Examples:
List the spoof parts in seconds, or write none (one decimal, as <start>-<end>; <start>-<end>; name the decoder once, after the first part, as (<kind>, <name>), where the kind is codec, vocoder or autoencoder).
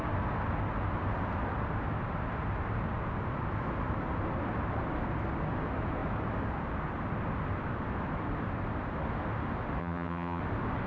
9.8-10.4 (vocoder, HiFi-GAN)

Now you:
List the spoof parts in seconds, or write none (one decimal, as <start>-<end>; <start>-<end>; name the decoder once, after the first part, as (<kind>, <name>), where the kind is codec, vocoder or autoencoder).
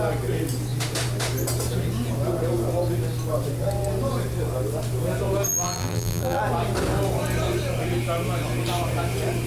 5.5-6.4 (vocoder, BigVGAN v2)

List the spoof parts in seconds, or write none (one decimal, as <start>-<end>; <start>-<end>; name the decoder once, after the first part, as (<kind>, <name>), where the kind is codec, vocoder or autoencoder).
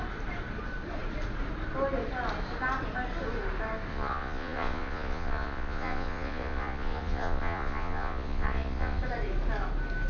3.9-9.0 (vocoder, Vocos)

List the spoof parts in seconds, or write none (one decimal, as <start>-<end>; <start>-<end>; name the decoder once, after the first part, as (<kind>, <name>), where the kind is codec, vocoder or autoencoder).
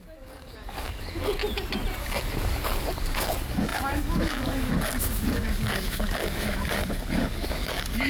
0.0-1.4 (codec, DAC); 2.0-8.1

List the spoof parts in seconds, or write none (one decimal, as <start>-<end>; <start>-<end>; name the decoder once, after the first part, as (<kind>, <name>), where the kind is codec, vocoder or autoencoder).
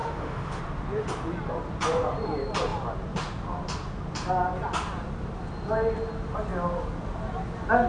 0.0-0.6 (autoencoder, DAC-VAE)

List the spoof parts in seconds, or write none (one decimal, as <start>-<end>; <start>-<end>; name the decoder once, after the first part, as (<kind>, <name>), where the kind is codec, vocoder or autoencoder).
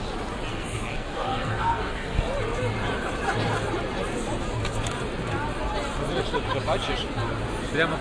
0.5-2.2 (codec, SNAC)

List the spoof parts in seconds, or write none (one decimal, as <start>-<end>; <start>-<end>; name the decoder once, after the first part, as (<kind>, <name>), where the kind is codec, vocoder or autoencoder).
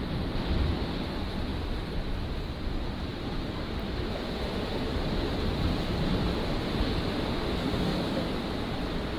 1.5-2.1 (vocoder, BigVGAN v2); 3.1-6.4; 7.9-8.5